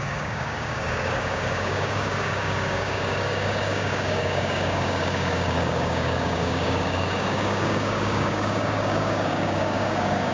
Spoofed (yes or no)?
yes